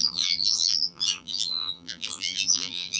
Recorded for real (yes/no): no